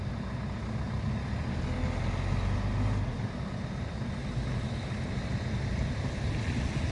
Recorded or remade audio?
recorded